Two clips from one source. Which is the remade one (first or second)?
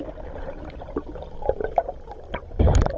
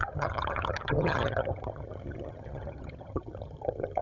second